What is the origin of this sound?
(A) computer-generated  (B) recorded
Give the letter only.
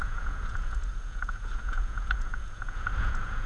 A